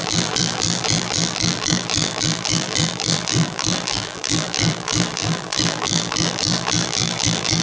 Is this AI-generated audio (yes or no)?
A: yes